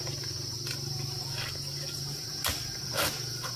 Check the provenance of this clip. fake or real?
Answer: real